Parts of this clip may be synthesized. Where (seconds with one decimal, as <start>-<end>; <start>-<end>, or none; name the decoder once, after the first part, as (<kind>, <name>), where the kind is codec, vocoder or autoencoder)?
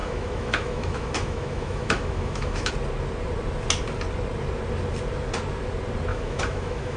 0.0-2.7 (autoencoder, DAC-VAE); 6.1-7.0